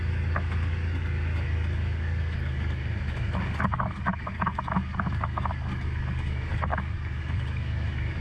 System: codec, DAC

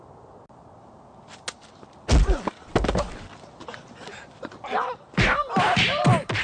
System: none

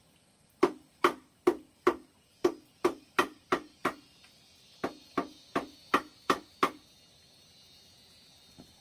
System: none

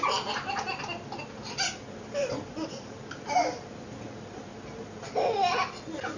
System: none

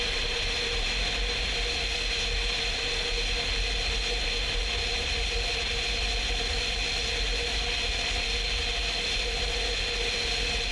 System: none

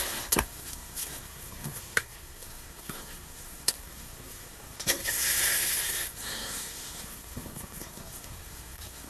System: codec, SNAC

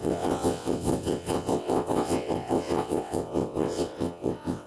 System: vocoder, WaveNeXt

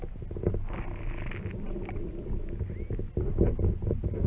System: none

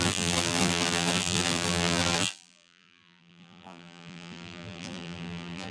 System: vocoder, BigVGAN v2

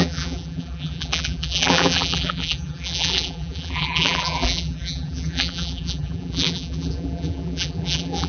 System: vocoder, BigVGAN v2